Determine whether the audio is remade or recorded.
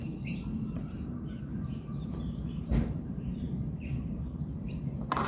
remade